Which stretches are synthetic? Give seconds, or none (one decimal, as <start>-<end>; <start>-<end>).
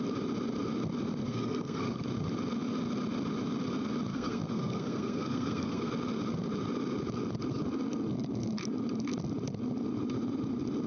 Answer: 1.2-2.0; 4.1-5.9